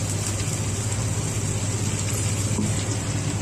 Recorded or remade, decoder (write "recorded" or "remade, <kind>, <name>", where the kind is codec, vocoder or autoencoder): recorded